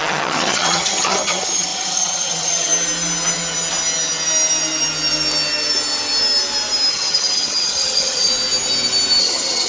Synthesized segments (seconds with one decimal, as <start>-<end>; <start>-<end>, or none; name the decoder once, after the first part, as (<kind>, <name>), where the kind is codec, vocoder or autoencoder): 0.0-2.7 (vocoder, HiFi-GAN); 6.9-8.3; 9.2-9.7